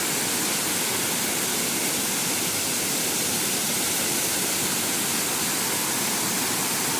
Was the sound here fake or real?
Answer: real